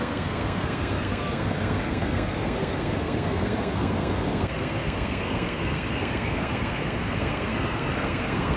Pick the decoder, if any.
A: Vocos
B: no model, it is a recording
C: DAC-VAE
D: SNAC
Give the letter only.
D